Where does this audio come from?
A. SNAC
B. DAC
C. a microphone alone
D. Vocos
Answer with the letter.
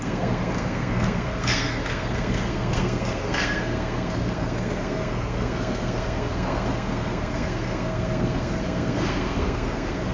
A